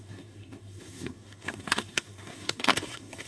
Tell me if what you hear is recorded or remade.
remade